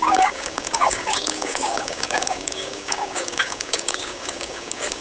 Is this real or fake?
fake